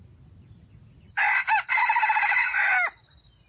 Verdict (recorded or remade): recorded